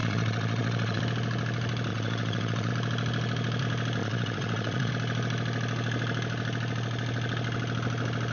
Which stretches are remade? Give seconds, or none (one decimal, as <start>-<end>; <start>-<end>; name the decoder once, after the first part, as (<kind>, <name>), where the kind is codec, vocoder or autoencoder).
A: 0.0-1.0 (vocoder, Vocos); 1.9-2.7; 4.0-4.9